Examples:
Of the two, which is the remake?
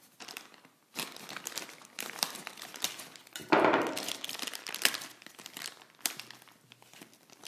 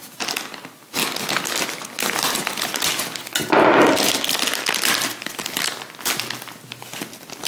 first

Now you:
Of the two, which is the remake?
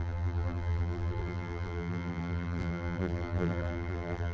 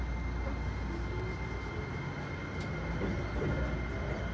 first